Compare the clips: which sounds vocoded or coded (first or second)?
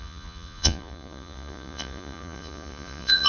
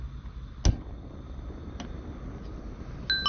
first